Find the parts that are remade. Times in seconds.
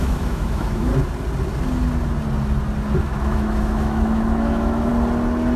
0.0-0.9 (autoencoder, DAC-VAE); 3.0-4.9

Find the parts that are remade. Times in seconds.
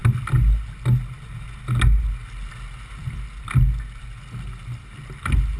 none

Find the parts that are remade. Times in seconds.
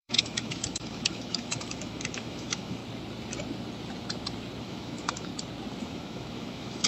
0.0-2.8 (autoencoder, DAC-VAE); 4.6-5.3; 5.8-6.9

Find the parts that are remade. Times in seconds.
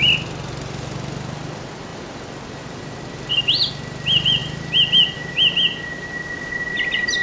none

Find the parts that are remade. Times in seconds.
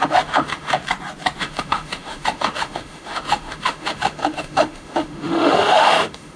0.0-0.8 (autoencoder, DAC-VAE); 1.4-6.4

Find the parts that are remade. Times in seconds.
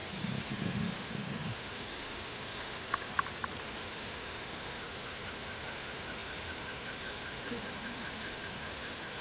0.5-3.1 (autoencoder, DAC-VAE); 3.6-9.2